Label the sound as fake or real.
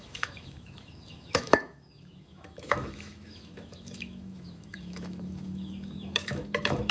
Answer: fake